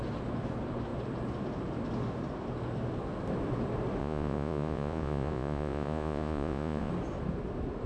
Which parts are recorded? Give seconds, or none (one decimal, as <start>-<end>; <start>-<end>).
0.0-4.0; 6.9-7.9